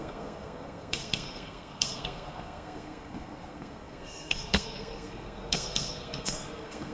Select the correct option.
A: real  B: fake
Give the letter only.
B